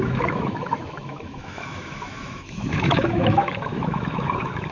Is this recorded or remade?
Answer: remade